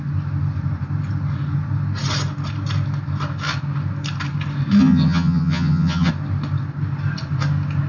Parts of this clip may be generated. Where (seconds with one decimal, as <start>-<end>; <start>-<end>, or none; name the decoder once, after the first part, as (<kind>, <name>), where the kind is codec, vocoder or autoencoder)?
4.8-6.1 (vocoder, HiFi-GAN)